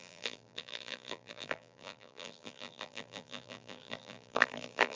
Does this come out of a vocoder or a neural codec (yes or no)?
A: yes